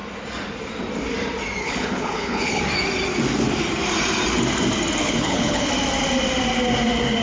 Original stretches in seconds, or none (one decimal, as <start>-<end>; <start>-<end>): 0.0-1.6; 2.6-5.0; 5.7-7.2